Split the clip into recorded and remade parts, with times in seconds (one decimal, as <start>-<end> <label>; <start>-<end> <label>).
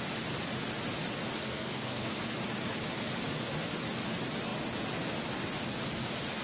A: 0.0-1.4 recorded; 1.4-2.2 remade; 2.2-6.4 recorded